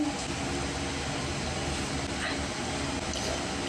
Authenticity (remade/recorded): recorded